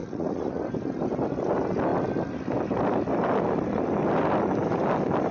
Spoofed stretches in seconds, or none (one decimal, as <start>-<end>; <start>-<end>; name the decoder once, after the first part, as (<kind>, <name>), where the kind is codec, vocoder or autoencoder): 0.0-0.6 (vocoder, Vocos)